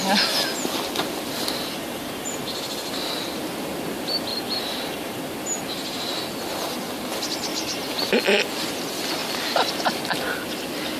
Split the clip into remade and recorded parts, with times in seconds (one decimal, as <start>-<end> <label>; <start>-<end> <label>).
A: 0.0-1.6 recorded; 1.6-2.4 remade; 2.4-4.3 recorded; 4.3-5.2 remade; 5.2-7.5 recorded; 7.5-8.1 remade; 8.1-9.2 recorded; 9.2-10.0 remade; 10.0-11.0 recorded